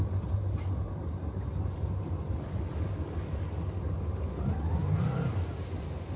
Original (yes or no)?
yes